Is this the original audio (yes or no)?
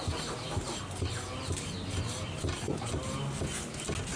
yes